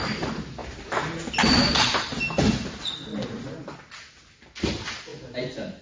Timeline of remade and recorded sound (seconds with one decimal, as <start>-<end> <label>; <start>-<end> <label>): 0.0-5.8 recorded